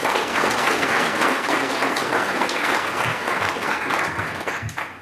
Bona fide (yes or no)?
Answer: no